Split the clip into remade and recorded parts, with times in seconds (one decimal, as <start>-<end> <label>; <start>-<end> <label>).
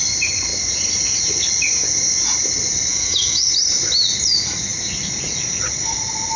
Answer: 0.0-2.9 recorded; 2.9-3.5 remade; 3.5-6.4 recorded